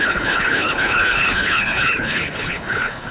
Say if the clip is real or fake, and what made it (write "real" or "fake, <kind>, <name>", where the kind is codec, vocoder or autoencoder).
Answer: fake, codec, HILCodec